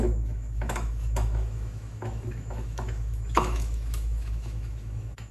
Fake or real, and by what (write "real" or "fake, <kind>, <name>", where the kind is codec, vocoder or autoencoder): fake, autoencoder, DAC-VAE